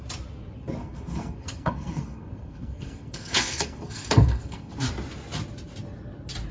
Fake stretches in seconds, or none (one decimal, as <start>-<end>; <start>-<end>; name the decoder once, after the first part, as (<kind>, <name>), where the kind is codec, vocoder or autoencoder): 0.8-4.7 (codec, SNAC)